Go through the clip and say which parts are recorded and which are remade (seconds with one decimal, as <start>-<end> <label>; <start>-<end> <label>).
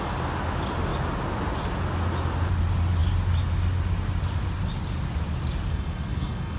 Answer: 0.0-5.7 recorded; 5.7-6.6 remade